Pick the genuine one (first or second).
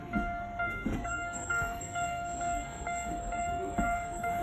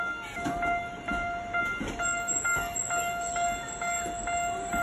second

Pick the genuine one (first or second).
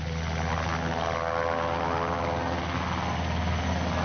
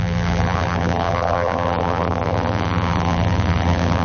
first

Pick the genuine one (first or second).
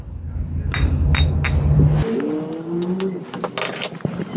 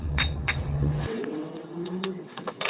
first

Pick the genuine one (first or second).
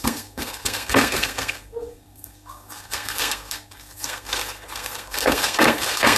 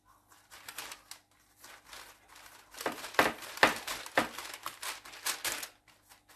second